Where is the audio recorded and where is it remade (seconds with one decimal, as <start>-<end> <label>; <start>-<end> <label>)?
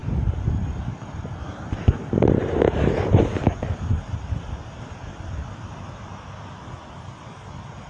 0.0-0.8 remade; 0.8-7.9 recorded